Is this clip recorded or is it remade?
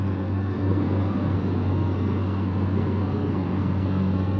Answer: remade